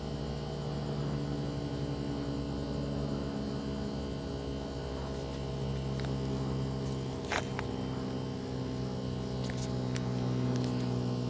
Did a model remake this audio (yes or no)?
no